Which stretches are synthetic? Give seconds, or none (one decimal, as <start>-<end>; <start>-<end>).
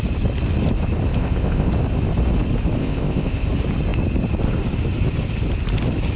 1.2-1.7; 2.8-3.5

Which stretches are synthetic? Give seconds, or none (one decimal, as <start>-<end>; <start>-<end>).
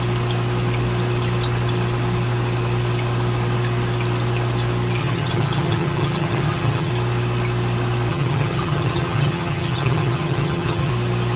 5.0-6.9; 8.1-10.9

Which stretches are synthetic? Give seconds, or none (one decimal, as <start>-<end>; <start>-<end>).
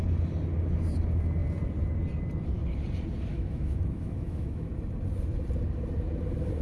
3.3-4.7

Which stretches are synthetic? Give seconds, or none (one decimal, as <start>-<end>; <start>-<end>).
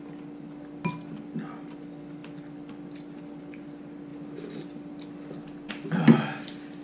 none